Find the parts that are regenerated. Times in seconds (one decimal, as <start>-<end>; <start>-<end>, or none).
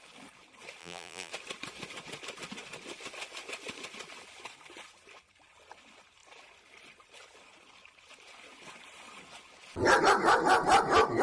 0.8-1.3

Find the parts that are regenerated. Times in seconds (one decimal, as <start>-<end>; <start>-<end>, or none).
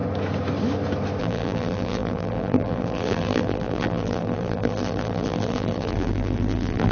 1.2-6.9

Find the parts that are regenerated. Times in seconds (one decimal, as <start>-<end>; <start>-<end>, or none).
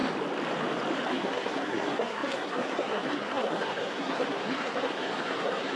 1.1-5.8